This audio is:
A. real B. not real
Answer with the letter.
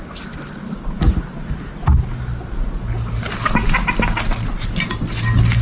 A